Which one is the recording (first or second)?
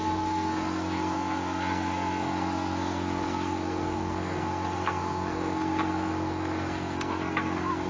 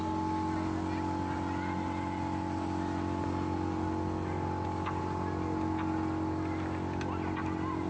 second